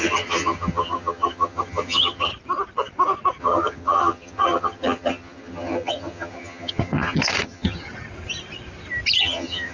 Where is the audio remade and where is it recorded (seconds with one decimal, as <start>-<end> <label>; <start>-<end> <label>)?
0.0-2.3 remade; 2.3-3.4 recorded; 3.4-7.8 remade; 7.8-9.2 recorded; 9.2-9.7 remade